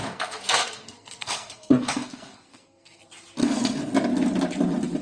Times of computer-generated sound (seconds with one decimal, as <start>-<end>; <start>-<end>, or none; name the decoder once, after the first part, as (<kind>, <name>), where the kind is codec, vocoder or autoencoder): 0.0-3.0 (codec, SNAC); 3.4-3.9